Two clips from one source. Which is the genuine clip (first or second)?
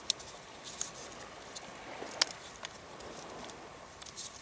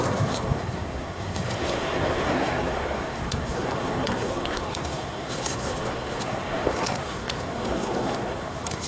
first